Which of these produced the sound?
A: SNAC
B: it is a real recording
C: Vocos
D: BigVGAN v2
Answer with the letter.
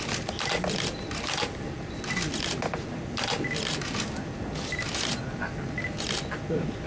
B